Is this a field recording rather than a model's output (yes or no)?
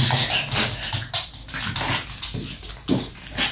yes